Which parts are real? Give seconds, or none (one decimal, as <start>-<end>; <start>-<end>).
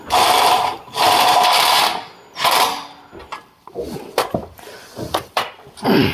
none